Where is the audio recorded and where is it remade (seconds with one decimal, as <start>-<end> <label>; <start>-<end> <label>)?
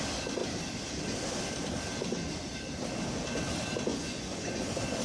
0.0-3.9 recorded; 3.9-4.6 remade; 4.6-5.0 recorded